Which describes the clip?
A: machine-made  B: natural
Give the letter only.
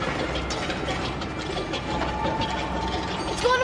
B